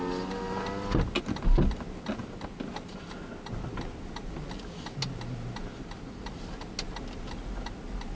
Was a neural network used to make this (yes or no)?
no